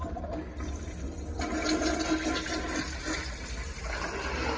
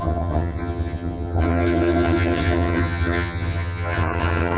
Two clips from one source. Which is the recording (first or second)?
first